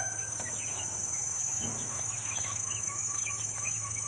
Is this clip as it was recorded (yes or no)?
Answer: no